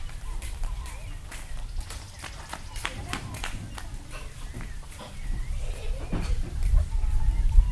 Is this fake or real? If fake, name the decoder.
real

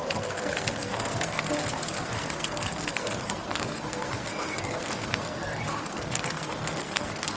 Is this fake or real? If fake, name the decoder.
fake, codec, SNAC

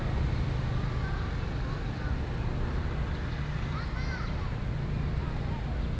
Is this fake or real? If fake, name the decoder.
real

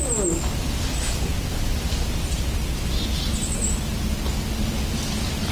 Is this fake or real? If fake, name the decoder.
real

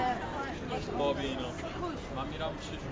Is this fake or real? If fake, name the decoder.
real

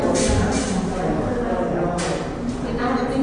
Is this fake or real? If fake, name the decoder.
real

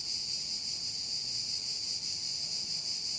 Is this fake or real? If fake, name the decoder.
real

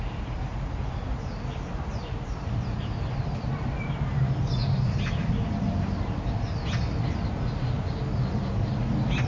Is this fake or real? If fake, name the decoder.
real